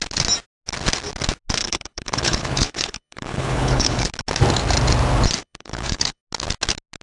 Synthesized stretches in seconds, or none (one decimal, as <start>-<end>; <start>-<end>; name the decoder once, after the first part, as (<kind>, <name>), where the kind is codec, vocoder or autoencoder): 1.6-4.1 (codec, HILCodec); 5.4-6.2